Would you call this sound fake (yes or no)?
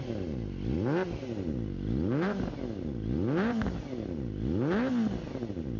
no